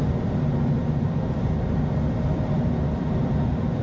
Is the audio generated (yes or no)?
yes